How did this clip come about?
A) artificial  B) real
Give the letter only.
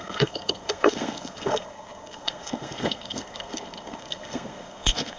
A